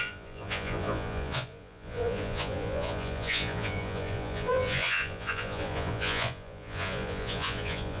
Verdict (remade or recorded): remade